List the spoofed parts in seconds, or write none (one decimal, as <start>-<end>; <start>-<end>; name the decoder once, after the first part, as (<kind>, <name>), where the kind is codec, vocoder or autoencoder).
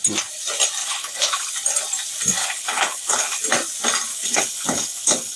0.8-1.5 (codec, HILCodec); 2.4-3.4; 4.1-5.4